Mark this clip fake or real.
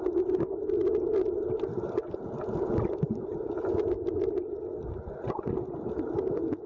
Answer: real